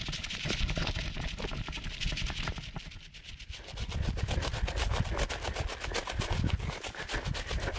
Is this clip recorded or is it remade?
recorded